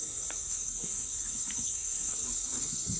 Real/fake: fake